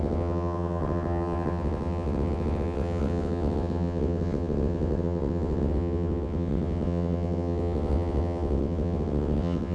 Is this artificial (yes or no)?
yes